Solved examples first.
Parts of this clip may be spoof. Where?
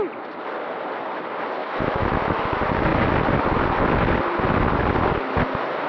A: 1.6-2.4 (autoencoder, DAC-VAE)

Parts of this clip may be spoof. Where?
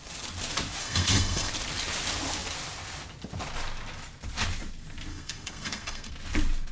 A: 0.8-1.5 (codec, SNAC); 5.1-6.1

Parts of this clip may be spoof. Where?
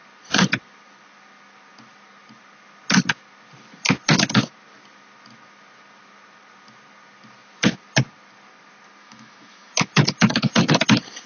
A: 9.0-10.7 (autoencoder, DAC-VAE)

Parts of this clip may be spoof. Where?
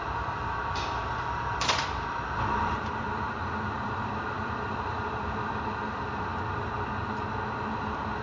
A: 0.0-6.3 (vocoder, BigVGAN v2); 7.7-8.2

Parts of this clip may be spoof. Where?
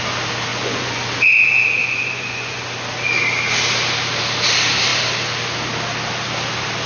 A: 0.5-1.0 (vocoder, Vocos); 1.8-2.6